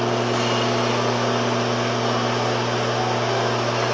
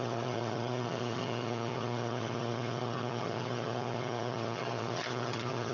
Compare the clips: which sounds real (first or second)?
first